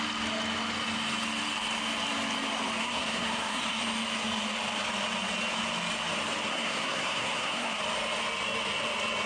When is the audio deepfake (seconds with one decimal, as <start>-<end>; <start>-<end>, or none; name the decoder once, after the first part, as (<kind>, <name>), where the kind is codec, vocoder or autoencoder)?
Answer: 2.8-3.8 (codec, SNAC); 6.5-7.8